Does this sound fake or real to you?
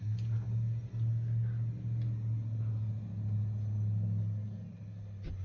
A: real